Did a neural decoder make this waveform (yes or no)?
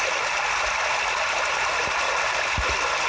no